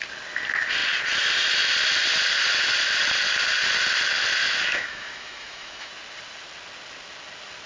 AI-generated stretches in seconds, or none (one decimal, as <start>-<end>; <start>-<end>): 4.4-5.9